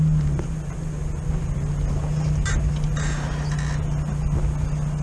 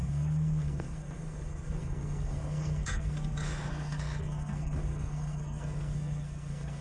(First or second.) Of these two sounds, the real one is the first